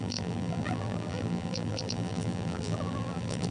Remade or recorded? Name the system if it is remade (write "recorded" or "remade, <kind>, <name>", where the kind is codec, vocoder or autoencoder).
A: remade, vocoder, BigVGAN v2